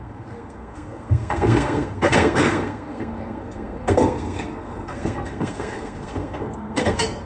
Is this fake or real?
fake